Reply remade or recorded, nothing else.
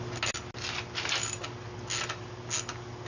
recorded